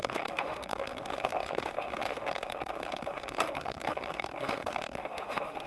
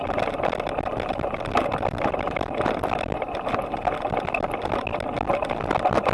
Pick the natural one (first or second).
second